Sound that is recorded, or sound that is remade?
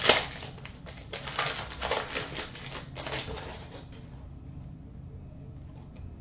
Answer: recorded